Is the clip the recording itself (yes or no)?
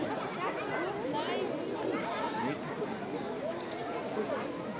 yes